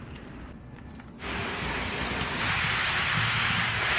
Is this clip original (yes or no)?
yes